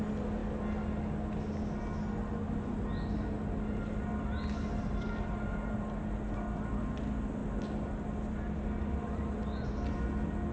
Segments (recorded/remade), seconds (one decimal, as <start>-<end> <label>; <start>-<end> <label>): 0.0-10.5 recorded